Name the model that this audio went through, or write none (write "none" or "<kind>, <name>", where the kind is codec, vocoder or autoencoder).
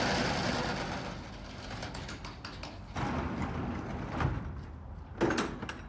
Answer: none